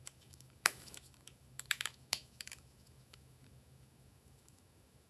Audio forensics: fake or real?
fake